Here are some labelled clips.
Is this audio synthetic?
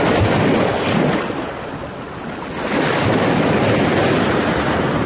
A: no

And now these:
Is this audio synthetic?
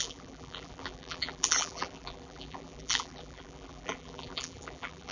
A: yes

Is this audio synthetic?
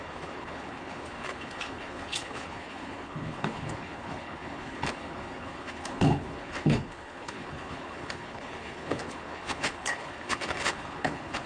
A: yes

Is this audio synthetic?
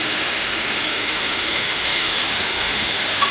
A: yes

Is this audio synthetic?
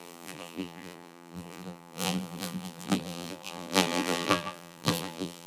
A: yes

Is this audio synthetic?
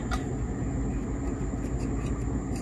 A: no